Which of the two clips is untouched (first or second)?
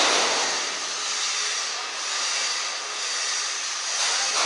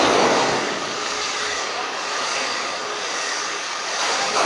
first